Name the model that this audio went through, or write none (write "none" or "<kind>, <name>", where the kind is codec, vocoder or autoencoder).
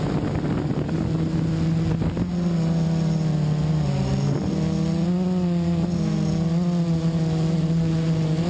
none